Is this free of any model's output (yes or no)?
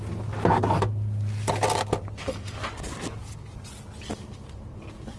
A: yes